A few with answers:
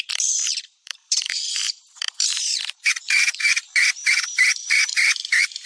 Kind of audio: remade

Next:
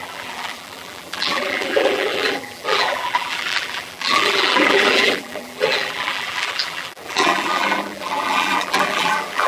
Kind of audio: remade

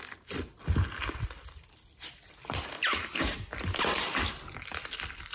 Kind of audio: remade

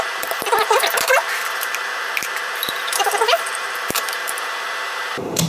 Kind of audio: remade